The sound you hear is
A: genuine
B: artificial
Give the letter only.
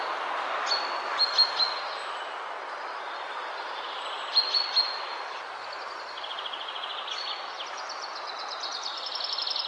A